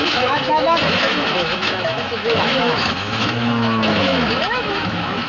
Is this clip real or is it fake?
fake